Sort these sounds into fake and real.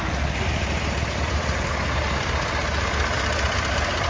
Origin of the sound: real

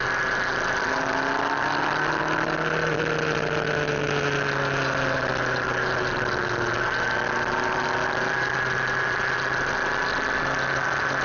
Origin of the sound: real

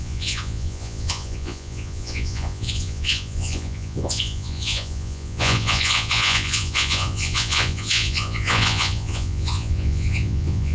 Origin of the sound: fake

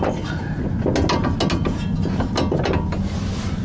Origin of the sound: real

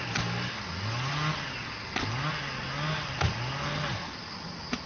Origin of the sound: real